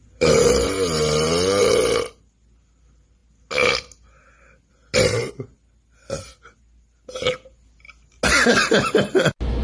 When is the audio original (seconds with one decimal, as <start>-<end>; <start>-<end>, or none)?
0.0-9.6